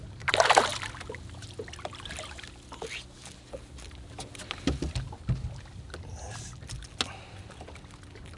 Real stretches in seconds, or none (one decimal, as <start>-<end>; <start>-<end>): 0.0-8.4